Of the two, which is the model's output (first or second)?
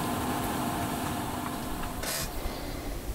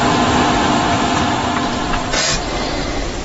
first